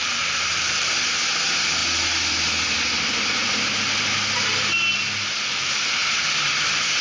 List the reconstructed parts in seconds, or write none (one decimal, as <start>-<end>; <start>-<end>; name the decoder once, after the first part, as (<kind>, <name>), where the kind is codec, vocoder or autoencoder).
0.0-0.9 (vocoder, BigVGAN v2)

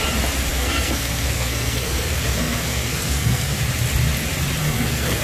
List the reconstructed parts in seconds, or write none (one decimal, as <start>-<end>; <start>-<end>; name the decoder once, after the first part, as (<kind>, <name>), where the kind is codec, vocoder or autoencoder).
0.5-3.6 (codec, SNAC); 4.6-5.2

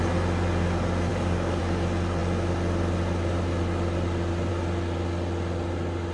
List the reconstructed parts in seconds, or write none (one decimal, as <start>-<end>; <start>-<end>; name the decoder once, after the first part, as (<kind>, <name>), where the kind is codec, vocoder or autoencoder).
1.1-1.6 (codec, DAC)